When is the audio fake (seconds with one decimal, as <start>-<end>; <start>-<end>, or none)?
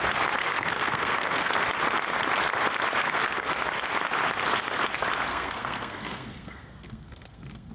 0.4-1.5; 3.0-3.5; 5.3-7.7